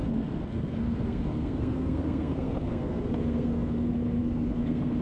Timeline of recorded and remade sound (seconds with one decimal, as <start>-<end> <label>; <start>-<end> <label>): 0.0-5.0 remade